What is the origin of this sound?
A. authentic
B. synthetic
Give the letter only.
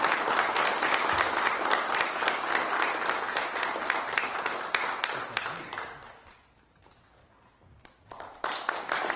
A